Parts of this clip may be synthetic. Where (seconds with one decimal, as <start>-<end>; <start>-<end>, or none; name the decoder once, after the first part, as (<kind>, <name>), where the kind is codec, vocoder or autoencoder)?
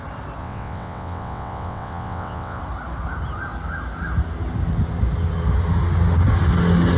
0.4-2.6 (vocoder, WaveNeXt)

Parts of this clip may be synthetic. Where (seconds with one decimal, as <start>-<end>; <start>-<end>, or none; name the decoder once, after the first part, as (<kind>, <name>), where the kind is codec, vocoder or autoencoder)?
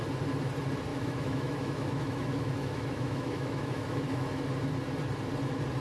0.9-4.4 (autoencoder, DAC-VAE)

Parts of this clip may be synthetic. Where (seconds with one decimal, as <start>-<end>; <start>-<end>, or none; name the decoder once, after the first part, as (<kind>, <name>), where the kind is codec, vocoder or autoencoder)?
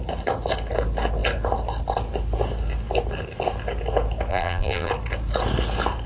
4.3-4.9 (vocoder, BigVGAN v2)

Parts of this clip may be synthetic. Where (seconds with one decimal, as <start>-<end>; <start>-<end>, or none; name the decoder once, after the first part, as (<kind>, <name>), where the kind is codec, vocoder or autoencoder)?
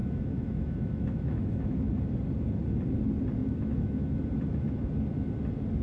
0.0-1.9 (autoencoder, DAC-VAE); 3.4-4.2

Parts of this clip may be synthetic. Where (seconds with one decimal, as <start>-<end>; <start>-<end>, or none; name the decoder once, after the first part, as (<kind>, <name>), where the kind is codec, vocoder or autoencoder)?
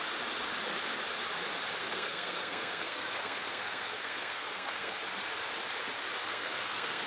1.8-5.0 (codec, SNAC); 6.2-7.1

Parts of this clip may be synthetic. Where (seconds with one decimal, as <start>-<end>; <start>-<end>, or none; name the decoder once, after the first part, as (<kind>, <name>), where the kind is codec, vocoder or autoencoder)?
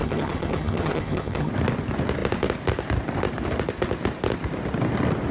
0.0-1.5 (vocoder, HiFi-GAN)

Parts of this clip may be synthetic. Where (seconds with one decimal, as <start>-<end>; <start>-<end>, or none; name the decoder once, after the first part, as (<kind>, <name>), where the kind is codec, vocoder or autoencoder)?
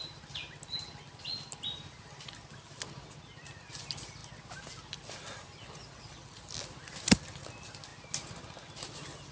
none